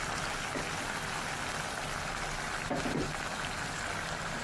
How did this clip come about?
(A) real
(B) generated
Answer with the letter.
A